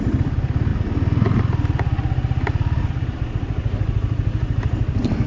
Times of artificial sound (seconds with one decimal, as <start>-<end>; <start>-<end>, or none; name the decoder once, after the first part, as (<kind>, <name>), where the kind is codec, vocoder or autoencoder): 0.0-0.7 (vocoder, BigVGAN v2); 2.8-5.3